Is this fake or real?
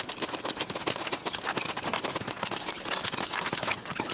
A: real